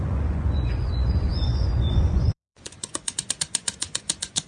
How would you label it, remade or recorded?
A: remade